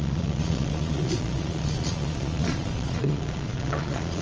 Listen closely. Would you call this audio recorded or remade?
remade